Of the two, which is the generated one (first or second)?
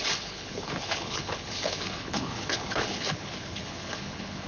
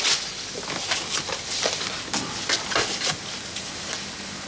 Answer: first